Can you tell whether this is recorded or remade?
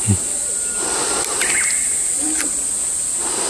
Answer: recorded